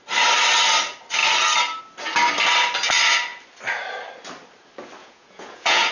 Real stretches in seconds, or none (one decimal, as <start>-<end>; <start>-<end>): 0.0-5.0